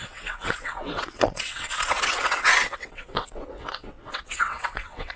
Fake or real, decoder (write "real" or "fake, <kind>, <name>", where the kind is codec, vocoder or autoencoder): fake, vocoder, WaveNeXt